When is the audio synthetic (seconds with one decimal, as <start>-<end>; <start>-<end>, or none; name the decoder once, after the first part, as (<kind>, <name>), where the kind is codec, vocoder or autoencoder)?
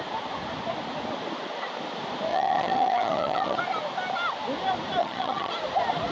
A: 2.3-3.6 (vocoder, HiFi-GAN); 5.0-5.5